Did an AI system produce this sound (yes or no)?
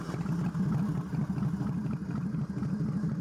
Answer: no